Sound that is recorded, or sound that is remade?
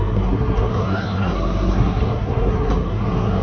remade